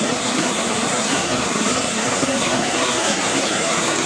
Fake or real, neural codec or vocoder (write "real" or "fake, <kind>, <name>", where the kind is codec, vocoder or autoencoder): fake, codec, SNAC